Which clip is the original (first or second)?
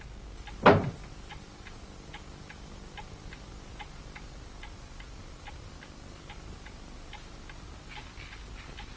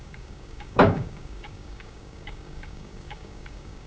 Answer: first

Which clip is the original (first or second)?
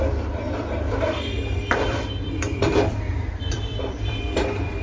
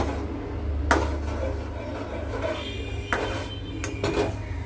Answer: second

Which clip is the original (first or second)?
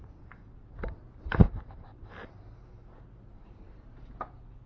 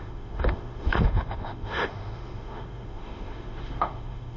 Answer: first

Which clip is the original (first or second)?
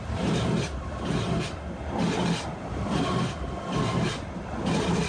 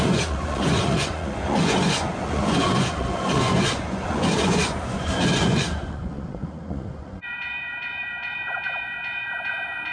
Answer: first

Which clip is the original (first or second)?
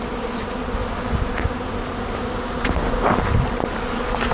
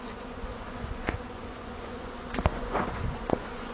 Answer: first